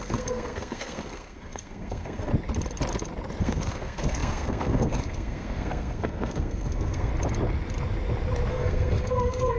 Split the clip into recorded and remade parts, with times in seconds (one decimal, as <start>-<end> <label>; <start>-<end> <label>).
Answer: 0.0-2.3 remade; 2.3-3.4 recorded; 3.4-7.1 remade; 7.1-8.5 recorded; 8.5-9.6 remade